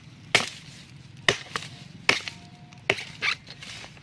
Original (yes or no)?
yes